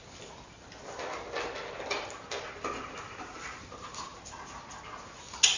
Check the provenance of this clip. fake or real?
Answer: real